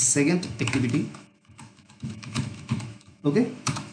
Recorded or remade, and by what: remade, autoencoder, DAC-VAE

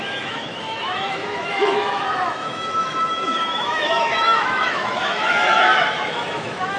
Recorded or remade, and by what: remade, autoencoder, DAC-VAE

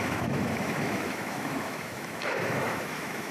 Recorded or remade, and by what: remade, autoencoder, DAC-VAE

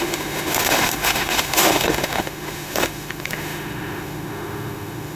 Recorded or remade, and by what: remade, autoencoder, DAC-VAE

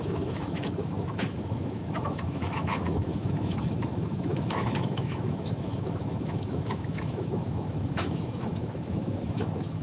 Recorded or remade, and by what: remade, autoencoder, DAC-VAE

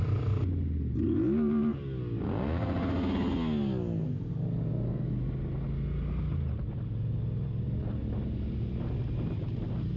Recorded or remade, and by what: recorded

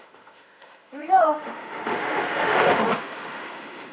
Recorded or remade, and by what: remade, autoencoder, DAC-VAE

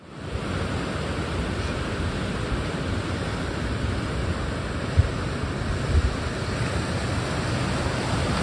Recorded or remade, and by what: recorded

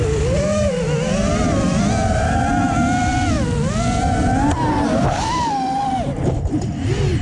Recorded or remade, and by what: recorded